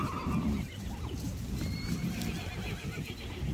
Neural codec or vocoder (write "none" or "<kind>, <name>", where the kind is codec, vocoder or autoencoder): none